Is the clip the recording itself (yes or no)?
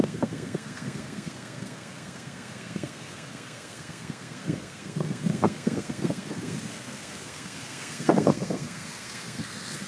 no